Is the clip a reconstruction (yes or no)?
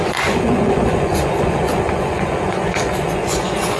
yes